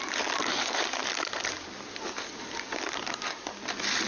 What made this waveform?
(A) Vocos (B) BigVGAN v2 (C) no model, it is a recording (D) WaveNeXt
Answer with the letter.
C